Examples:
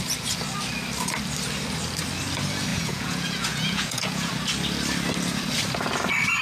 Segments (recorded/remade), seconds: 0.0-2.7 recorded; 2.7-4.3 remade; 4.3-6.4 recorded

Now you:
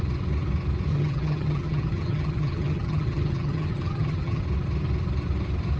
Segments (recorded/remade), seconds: 0.0-0.9 recorded; 0.9-4.4 remade; 4.4-5.8 recorded

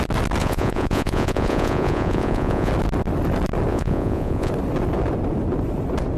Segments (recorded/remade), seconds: 0.0-0.4 recorded; 0.4-2.7 remade; 2.7-3.7 recorded; 3.7-4.5 remade; 4.5-6.2 recorded

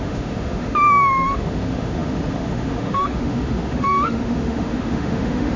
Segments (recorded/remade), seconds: 0.0-5.6 remade

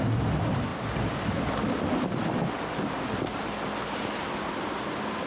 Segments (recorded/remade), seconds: 0.0-5.3 recorded

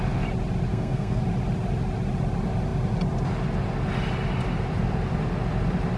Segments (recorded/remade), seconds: 0.0-0.7 recorded; 0.7-1.2 remade; 1.2-6.0 recorded